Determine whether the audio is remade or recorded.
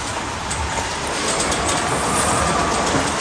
recorded